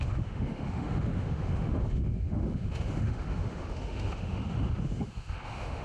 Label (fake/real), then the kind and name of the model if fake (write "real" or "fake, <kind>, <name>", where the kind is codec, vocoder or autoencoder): fake, autoencoder, DAC-VAE